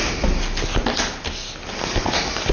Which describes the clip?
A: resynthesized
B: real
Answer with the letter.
B